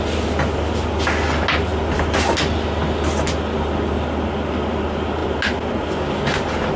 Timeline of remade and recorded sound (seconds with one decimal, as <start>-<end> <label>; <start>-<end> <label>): 0.0-6.8 recorded